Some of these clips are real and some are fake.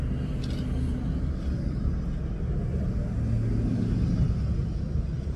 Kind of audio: real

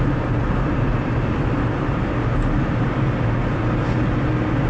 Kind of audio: real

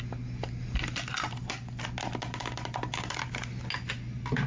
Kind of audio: real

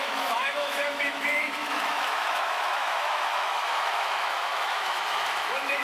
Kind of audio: fake